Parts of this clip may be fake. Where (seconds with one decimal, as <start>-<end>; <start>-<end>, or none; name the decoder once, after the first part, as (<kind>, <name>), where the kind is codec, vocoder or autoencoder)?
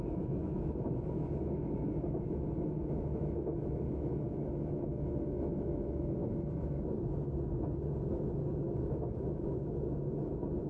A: 0.0-6.2 (autoencoder, DAC-VAE); 8.1-10.7